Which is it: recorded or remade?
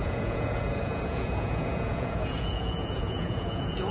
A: remade